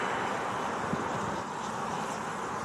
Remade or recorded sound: recorded